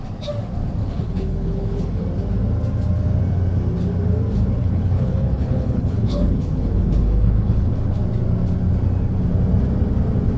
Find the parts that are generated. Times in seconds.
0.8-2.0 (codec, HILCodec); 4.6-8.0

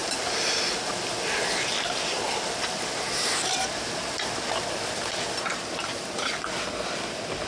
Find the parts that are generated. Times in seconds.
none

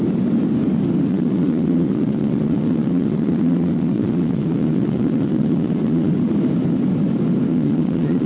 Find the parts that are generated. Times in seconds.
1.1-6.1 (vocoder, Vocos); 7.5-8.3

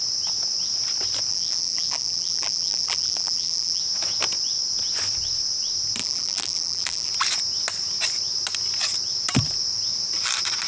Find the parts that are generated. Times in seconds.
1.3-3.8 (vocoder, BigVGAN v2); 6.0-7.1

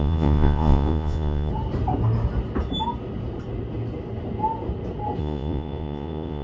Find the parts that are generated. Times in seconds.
0.0-1.5 (vocoder, Vocos); 5.2-6.4